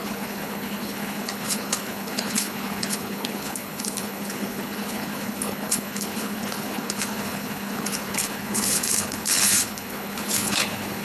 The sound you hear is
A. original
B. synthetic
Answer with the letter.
B